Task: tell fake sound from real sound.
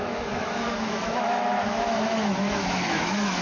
fake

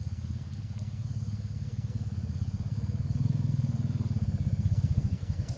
fake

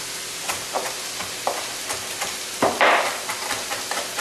fake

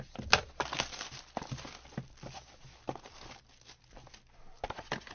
real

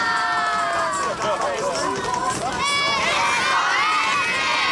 real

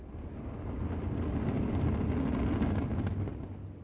real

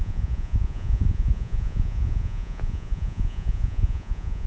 fake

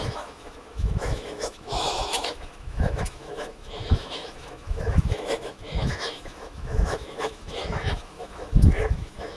fake